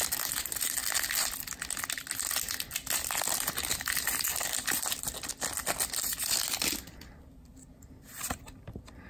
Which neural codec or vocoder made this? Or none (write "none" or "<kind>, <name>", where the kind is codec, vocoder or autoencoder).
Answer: none